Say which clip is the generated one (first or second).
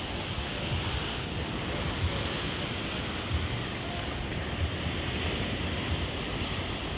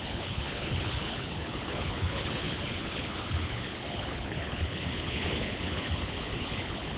second